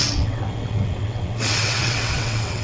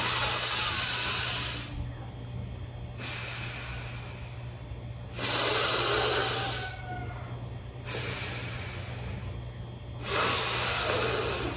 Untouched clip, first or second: second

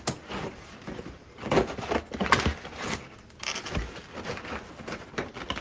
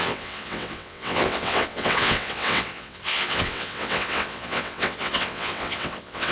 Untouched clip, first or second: first